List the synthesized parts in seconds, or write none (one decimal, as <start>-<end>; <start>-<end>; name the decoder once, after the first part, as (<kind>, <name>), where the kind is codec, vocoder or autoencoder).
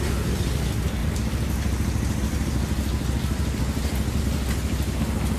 none